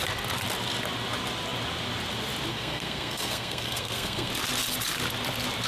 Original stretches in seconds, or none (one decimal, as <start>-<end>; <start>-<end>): 0.0-2.5; 4.3-5.7